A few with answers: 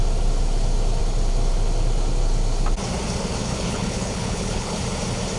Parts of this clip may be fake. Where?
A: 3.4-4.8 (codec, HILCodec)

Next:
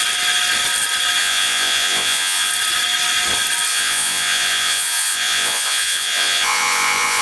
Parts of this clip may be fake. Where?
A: 1.2-2.5 (vocoder, Vocos); 3.7-7.2